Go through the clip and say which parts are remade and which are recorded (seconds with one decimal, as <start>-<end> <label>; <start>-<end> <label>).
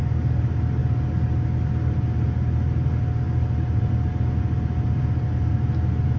0.0-6.2 recorded